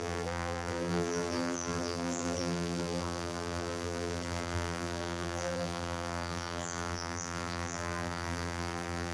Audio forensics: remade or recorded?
remade